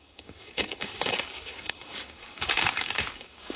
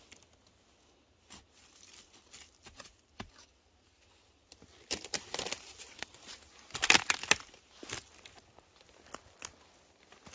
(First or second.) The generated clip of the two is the first